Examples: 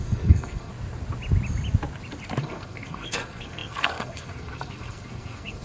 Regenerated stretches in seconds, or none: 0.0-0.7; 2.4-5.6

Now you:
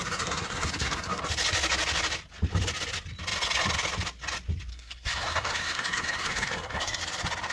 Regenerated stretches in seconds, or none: 0.0-1.2; 4.7-7.0

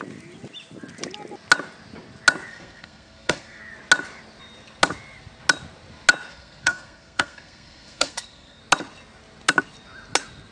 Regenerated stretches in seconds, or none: 2.5-3.6; 6.3-8.6

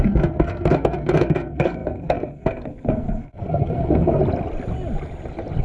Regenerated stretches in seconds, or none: 0.0-4.2

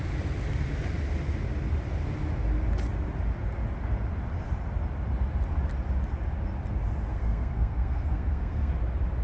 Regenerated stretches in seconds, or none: 7.1-8.7

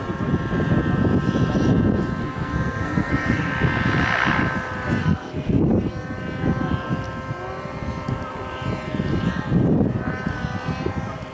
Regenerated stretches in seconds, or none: 2.2-3.5; 5.0-5.7